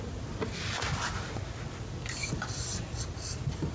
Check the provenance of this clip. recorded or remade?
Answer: recorded